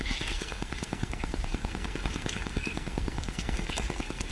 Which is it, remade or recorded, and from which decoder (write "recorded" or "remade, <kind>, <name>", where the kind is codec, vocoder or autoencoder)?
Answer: remade, codec, SNAC